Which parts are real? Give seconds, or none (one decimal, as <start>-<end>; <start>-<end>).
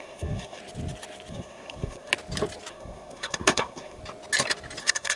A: 0.6-1.3; 2.1-2.7; 4.0-4.8